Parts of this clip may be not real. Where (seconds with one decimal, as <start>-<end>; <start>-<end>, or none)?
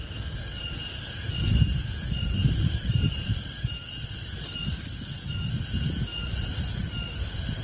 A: 2.4-3.8